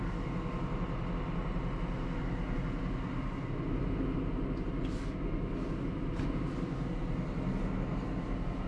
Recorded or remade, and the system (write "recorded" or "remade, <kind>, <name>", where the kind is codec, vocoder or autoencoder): recorded